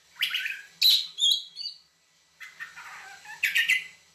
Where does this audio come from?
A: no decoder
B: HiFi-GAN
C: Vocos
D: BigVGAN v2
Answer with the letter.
A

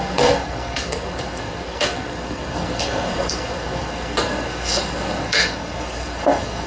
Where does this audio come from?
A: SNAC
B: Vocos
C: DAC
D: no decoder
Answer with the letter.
A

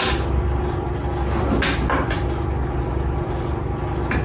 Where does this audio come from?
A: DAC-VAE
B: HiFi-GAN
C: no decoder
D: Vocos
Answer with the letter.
C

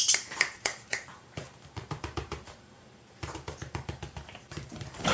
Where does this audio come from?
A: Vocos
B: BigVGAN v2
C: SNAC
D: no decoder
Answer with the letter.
B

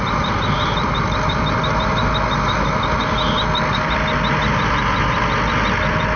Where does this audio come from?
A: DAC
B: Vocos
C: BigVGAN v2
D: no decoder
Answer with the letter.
D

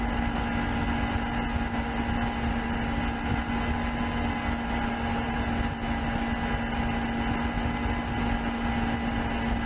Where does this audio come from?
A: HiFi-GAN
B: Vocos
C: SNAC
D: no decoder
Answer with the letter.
D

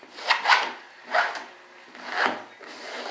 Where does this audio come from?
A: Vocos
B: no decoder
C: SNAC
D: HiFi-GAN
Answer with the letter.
B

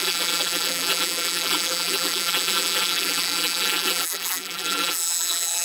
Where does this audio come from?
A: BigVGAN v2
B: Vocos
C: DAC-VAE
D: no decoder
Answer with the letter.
A